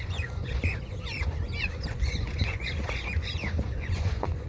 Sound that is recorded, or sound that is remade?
remade